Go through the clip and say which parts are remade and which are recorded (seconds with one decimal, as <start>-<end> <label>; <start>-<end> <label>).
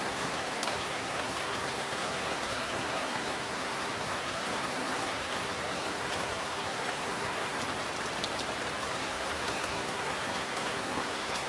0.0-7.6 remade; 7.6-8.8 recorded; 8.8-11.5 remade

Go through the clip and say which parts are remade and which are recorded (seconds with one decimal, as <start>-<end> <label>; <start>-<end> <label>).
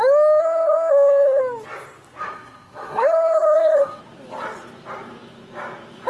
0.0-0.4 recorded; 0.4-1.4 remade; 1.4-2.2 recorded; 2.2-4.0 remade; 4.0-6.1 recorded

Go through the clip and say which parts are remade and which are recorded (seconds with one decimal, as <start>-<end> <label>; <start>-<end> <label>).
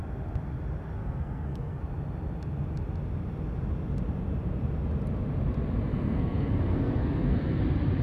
0.0-1.0 recorded; 1.0-1.8 remade; 1.8-5.9 recorded; 5.9-7.6 remade; 7.6-8.0 recorded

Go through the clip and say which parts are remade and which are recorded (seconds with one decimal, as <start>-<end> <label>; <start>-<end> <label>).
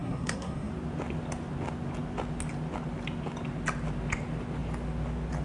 0.0-0.7 remade; 0.7-5.4 recorded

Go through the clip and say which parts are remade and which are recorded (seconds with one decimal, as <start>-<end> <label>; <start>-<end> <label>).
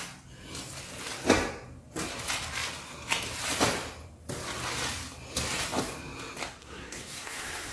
0.0-6.6 recorded; 6.6-7.7 remade